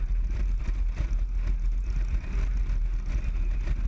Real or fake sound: real